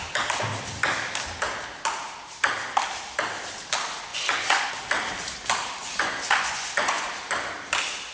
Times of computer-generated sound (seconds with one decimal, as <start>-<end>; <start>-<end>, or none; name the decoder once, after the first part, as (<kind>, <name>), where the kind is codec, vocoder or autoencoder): 4.1-4.7 (vocoder, Vocos); 5.8-7.1